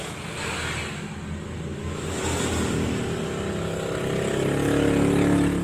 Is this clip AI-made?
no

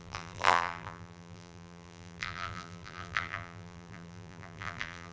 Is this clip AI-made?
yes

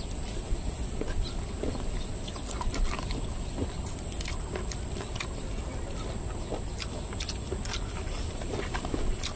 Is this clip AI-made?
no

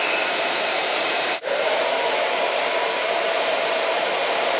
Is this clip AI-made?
yes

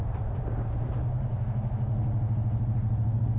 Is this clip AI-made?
no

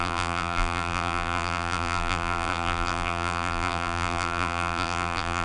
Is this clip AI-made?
yes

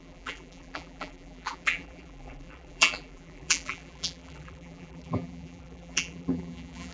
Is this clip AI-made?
yes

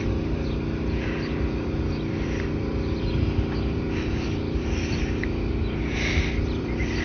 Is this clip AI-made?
yes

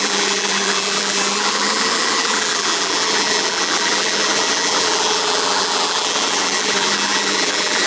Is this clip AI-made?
yes